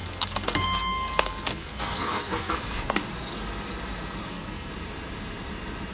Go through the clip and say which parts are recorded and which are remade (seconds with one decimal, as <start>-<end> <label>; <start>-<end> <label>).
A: 0.0-3.0 remade; 3.0-4.3 recorded; 4.3-4.7 remade; 4.7-5.9 recorded

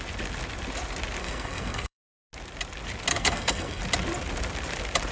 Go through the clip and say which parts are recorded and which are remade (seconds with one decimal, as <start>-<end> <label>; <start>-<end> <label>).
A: 0.0-1.2 recorded; 1.2-2.3 remade; 2.3-3.1 recorded; 3.1-3.8 remade; 3.8-5.1 recorded

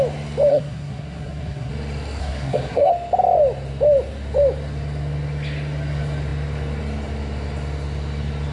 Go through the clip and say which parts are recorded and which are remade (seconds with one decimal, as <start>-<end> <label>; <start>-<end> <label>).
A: 0.0-0.5 recorded; 0.5-1.7 remade; 1.7-2.2 recorded; 2.2-2.9 remade; 2.9-8.5 recorded